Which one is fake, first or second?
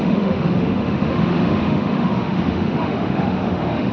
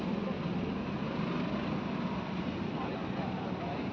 first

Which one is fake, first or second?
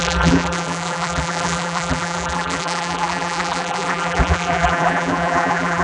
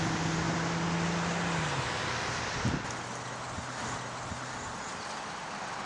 first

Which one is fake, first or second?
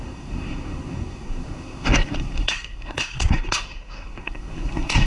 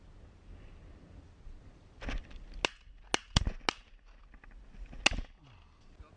first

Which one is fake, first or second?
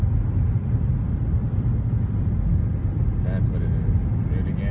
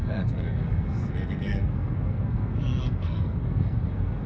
second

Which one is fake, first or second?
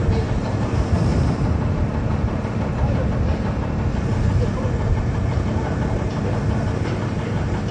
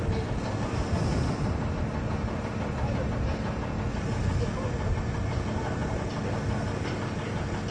first